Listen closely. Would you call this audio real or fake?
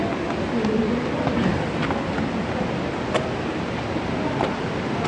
real